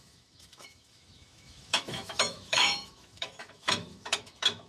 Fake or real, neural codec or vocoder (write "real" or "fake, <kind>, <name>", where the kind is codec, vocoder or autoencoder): fake, autoencoder, DAC-VAE